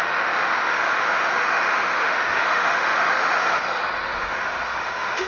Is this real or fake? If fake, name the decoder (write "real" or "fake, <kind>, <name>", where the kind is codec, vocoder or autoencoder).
fake, autoencoder, DAC-VAE